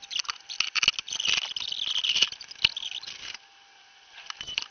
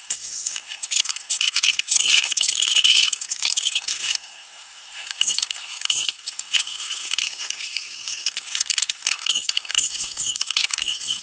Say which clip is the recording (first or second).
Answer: first